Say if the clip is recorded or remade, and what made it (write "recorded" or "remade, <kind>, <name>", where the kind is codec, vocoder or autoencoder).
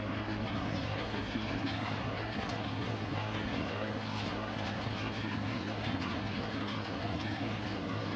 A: remade, codec, SNAC